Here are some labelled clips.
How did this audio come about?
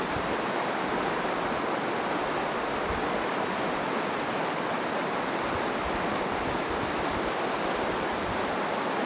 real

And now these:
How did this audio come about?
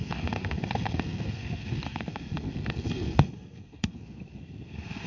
fake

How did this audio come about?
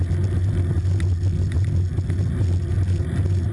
real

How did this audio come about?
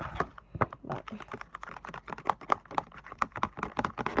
real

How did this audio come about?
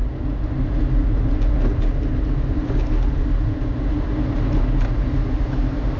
real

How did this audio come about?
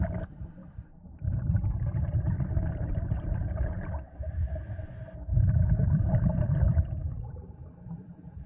fake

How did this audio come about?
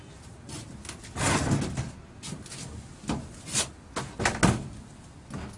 real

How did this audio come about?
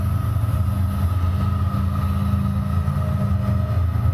real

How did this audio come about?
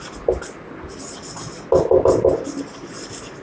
real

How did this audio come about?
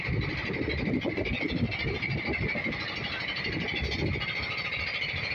real